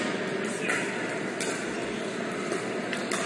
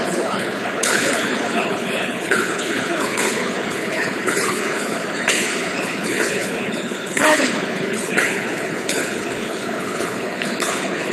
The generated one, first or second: second